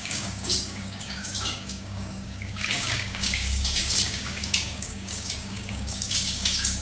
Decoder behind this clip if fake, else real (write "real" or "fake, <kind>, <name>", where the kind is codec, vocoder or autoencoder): fake, codec, DAC